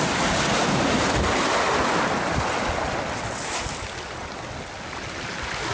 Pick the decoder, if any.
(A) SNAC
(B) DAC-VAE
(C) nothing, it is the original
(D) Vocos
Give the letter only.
C